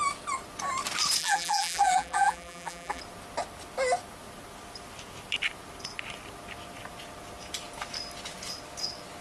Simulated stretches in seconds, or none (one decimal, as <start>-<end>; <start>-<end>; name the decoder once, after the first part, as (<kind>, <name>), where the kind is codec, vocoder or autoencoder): 1.2-3.0 (vocoder, BigVGAN v2)